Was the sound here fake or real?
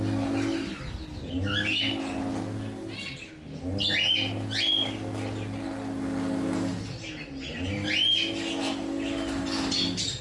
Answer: real